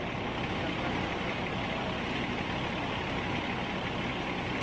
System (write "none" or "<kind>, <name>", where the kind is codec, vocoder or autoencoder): none